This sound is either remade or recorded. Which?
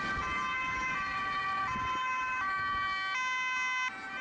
recorded